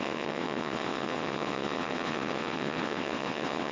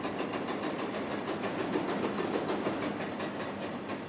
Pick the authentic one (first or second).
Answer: second